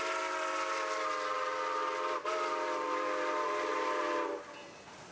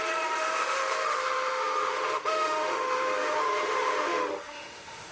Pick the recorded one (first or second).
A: first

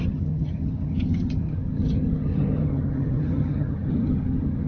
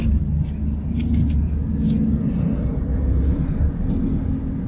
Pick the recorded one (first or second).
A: second